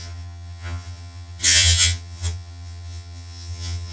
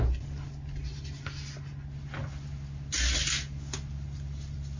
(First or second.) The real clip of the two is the second